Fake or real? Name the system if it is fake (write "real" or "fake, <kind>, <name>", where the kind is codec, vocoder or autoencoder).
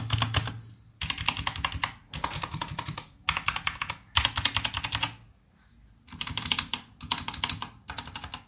real